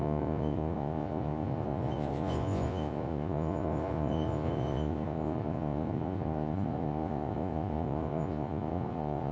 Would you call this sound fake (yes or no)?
yes